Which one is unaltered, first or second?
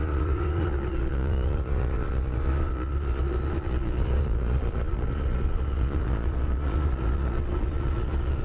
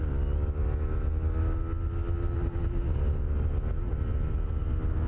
second